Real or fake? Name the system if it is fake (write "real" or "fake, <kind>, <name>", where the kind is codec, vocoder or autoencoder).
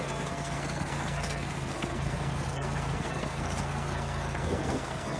fake, codec, SNAC